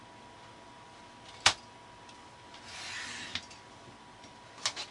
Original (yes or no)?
yes